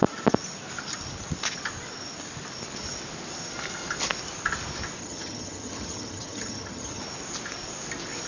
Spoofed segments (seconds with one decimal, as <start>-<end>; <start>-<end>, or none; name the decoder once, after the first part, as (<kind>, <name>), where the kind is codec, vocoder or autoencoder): 5.0-7.0 (vocoder, HiFi-GAN)

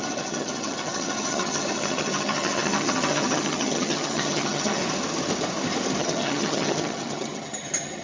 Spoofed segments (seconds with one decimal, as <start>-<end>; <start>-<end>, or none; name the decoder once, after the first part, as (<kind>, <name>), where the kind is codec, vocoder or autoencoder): 0.0-4.8 (vocoder, HiFi-GAN); 6.0-8.0

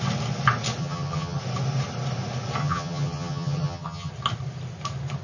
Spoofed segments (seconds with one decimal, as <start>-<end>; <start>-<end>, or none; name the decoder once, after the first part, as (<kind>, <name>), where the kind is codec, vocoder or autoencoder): 0.8-1.4 (vocoder, HiFi-GAN); 2.6-4.1

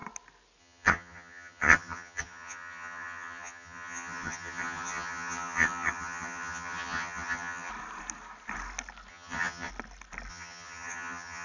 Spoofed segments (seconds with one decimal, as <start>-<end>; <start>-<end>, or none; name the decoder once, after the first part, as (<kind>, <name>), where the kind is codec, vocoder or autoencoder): 0.6-7.7 (vocoder, HiFi-GAN); 9.1-9.7; 10.3-11.4

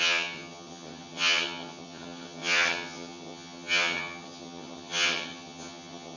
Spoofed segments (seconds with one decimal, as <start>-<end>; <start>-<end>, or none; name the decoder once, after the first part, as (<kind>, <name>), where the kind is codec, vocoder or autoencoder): 0.0-6.2 (vocoder, HiFi-GAN)

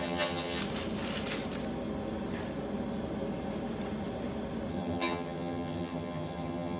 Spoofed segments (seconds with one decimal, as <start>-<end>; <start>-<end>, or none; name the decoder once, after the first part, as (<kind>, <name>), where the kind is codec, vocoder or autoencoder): 0.0-0.6 (vocoder, HiFi-GAN); 4.7-6.8